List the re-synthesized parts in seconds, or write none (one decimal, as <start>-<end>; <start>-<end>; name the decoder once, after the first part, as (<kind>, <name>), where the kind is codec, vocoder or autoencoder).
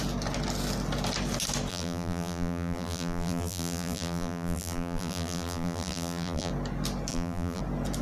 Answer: 1.7-6.5 (vocoder, BigVGAN v2); 7.1-7.6